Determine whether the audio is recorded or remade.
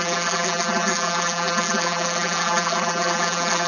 remade